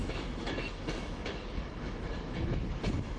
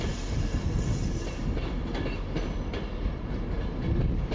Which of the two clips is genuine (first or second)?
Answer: second